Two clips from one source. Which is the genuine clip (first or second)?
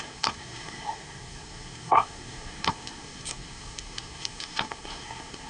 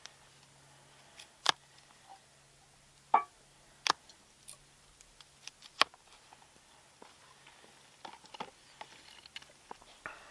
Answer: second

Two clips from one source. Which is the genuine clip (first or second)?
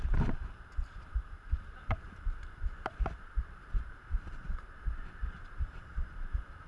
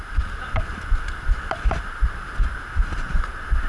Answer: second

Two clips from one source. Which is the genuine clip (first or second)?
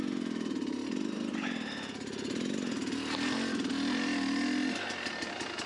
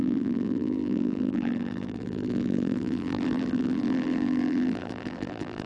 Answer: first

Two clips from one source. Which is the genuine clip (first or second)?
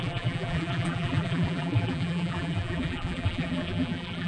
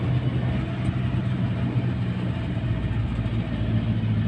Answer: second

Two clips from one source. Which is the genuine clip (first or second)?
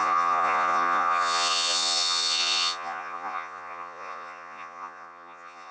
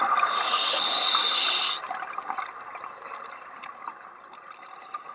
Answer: second